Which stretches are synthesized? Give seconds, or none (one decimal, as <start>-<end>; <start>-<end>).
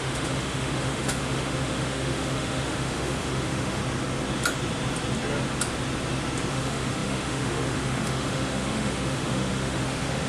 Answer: 0.0-3.8; 6.5-10.3